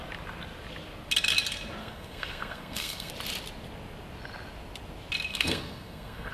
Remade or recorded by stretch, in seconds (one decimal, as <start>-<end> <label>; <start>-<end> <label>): 0.0-1.8 recorded; 1.8-3.1 remade; 3.1-5.3 recorded; 5.3-6.3 remade